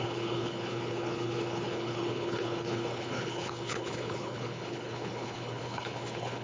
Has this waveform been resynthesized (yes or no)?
yes